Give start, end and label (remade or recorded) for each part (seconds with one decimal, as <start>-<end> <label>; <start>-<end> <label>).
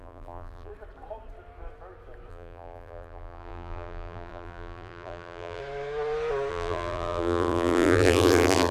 0.0-0.7 remade; 0.7-2.3 recorded; 2.3-5.6 remade; 5.6-6.5 recorded; 6.5-8.7 remade